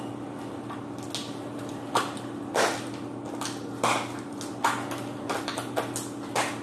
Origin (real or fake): real